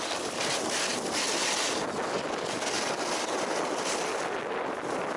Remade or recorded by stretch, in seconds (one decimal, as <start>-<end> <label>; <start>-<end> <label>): 0.0-5.2 recorded